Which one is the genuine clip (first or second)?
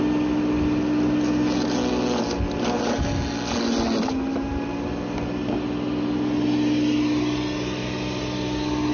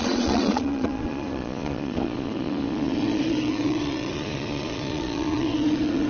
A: first